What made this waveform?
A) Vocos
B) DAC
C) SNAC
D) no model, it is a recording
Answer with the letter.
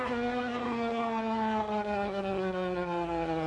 C